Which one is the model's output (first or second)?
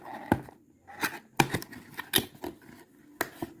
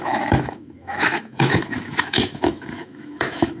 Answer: second